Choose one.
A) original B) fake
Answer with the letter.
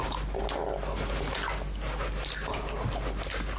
A